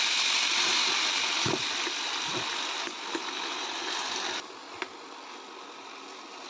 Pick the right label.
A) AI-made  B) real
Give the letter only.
B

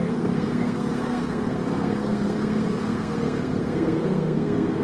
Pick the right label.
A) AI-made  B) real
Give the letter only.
A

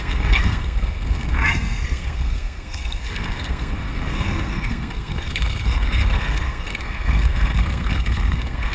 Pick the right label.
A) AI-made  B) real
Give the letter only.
A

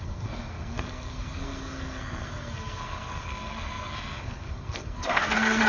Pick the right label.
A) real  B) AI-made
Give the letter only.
B